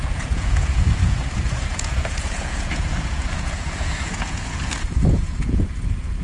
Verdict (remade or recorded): remade